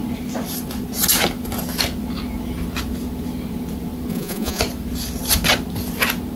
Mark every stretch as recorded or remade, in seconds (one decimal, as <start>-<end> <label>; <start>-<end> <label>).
0.0-4.1 recorded; 4.1-4.6 remade; 4.6-6.4 recorded